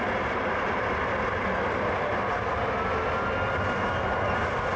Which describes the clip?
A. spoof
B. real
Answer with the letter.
B